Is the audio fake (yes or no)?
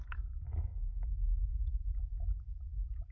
yes